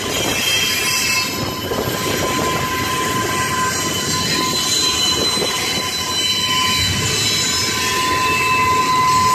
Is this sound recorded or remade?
recorded